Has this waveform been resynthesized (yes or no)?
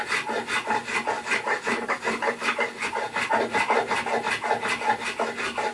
no